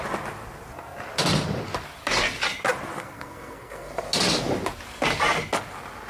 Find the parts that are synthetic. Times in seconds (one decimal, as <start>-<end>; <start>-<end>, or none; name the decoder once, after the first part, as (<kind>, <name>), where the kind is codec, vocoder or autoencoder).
3.0-4.0 (codec, SNAC)